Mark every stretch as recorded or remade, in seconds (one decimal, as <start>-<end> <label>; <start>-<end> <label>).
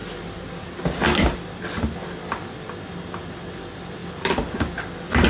0.0-5.3 recorded